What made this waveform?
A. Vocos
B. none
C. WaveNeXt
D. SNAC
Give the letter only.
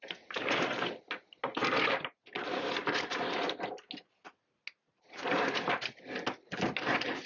B